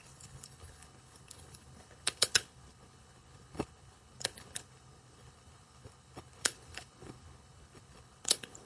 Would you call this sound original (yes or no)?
no